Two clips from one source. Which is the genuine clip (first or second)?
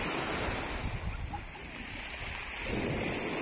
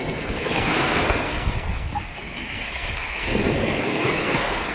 first